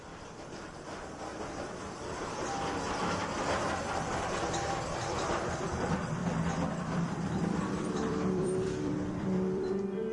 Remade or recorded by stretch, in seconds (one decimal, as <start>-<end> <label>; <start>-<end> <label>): 0.0-6.2 remade; 6.2-6.8 recorded; 6.8-10.1 remade

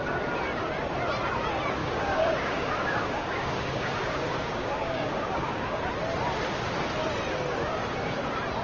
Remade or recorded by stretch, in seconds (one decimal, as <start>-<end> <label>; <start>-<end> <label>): 0.0-1.8 recorded; 1.8-5.8 remade; 5.8-8.6 recorded

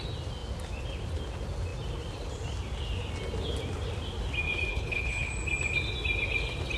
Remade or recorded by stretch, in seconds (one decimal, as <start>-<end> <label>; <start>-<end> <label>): 0.0-4.7 recorded; 4.7-5.3 remade; 5.3-6.8 recorded

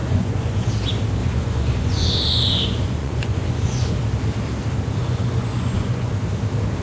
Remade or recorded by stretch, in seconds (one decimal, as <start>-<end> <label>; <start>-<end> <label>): 0.0-0.7 remade; 0.7-1.2 recorded; 1.2-3.9 remade; 3.9-5.0 recorded; 5.0-6.1 remade; 6.1-6.8 recorded